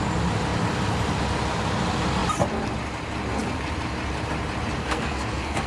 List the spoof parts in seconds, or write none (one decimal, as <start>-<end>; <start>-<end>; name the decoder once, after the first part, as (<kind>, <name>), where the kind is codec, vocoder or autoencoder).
4.8-5.7 (codec, SNAC)